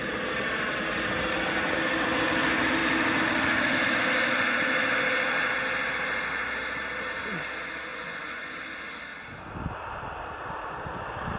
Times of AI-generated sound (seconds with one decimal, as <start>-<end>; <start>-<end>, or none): 7.9-8.5